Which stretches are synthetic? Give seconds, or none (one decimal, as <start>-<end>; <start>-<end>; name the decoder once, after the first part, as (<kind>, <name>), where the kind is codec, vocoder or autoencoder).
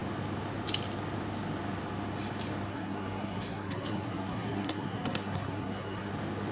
2.7-6.1 (codec, SNAC)